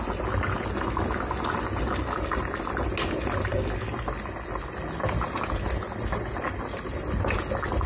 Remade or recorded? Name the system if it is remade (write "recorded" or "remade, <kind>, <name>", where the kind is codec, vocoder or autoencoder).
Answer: recorded